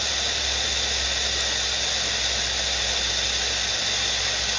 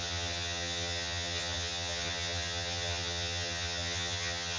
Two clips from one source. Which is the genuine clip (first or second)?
first